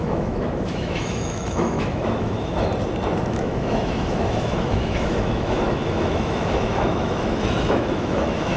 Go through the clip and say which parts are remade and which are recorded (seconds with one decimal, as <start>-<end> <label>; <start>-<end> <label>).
0.0-2.7 remade; 2.7-3.3 recorded; 3.3-8.6 remade